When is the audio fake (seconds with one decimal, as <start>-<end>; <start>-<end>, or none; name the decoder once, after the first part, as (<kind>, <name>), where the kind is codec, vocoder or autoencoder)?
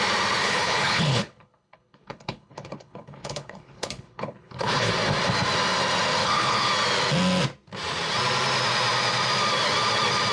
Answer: 0.4-4.9 (codec, HILCodec); 6.2-6.7